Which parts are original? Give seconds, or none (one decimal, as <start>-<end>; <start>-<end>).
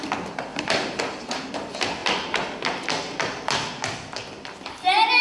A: 0.0-0.5; 1.5-5.2